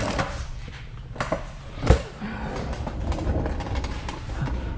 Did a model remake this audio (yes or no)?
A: yes